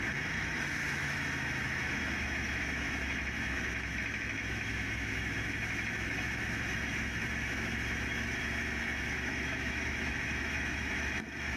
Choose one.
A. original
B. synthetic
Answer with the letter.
B